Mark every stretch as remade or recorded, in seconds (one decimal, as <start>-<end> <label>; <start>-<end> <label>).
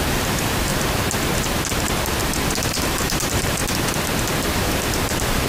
0.0-0.7 remade; 0.7-2.6 recorded; 2.6-3.6 remade; 3.6-4.4 recorded; 4.4-5.5 remade